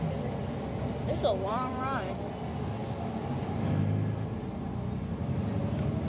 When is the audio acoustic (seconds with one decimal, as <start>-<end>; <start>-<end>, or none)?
0.0-1.5; 2.2-6.1